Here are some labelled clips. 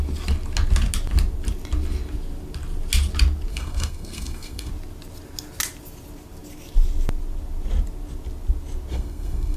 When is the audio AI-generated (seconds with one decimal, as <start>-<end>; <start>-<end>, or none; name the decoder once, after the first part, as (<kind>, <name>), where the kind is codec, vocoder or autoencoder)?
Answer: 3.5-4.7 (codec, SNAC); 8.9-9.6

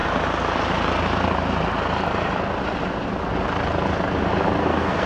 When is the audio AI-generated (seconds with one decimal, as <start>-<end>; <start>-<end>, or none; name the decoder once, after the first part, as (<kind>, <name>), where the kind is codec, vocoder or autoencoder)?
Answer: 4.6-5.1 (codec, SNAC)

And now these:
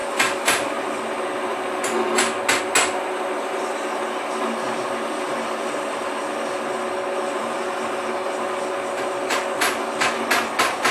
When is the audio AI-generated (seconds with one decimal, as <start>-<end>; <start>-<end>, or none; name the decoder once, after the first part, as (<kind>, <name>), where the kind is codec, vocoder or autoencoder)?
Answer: none